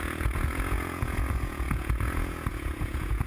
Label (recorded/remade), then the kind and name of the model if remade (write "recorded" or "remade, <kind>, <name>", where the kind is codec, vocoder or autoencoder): remade, vocoder, Vocos